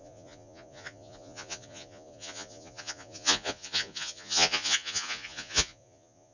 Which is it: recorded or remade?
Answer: remade